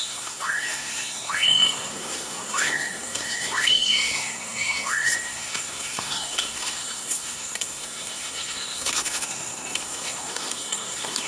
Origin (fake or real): fake